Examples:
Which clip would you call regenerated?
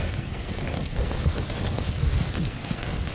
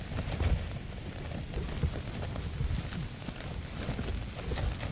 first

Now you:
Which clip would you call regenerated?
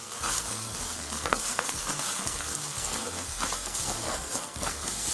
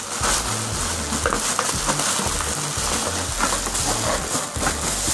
first